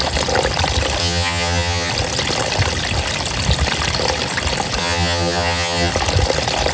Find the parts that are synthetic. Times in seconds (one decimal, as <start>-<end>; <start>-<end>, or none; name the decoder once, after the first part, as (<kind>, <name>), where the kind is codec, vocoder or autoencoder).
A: 1.0-1.9 (vocoder, HiFi-GAN); 4.8-5.9